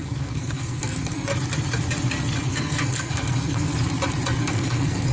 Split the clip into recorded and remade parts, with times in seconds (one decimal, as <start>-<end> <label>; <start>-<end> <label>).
0.0-1.3 remade; 1.3-2.5 recorded; 2.5-3.7 remade; 3.7-4.4 recorded; 4.4-5.1 remade